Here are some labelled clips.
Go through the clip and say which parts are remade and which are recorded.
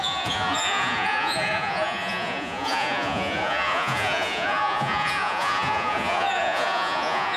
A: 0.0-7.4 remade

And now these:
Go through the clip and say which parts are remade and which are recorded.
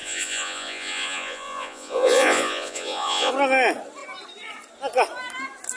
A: 0.0-3.3 remade; 3.3-5.8 recorded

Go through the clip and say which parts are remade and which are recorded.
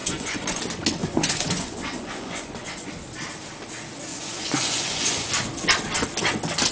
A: 0.0-0.6 remade; 0.6-1.0 recorded; 1.0-2.9 remade; 2.9-4.1 recorded; 4.1-5.3 remade; 5.3-6.7 recorded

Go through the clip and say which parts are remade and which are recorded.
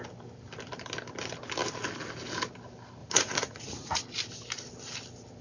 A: 0.0-3.0 recorded; 3.0-4.0 remade; 4.0-5.4 recorded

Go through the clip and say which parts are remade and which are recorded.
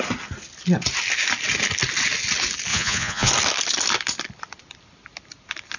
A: 0.0-2.7 recorded; 2.7-3.3 remade; 3.3-5.8 recorded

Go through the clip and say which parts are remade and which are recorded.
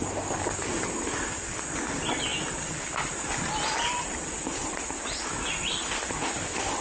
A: 0.0-6.8 recorded